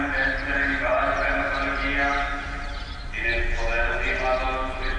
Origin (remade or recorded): recorded